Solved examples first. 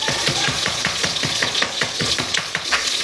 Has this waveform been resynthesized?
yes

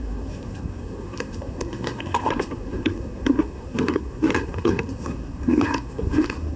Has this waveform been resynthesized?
yes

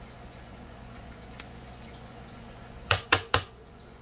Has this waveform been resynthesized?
yes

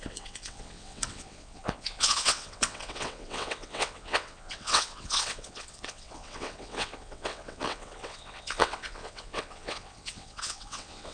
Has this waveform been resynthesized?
yes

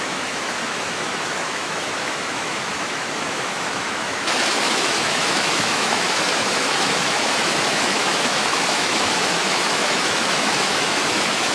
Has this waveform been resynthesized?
yes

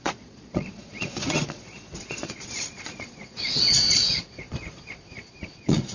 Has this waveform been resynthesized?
yes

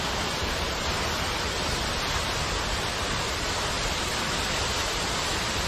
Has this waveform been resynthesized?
no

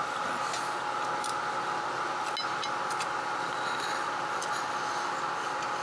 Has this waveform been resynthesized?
no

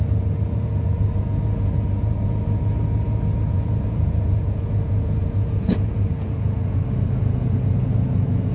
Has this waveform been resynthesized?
yes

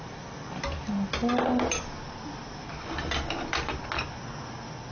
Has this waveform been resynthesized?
no